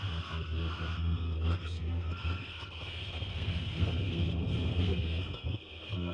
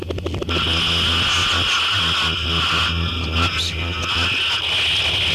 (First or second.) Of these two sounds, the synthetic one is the first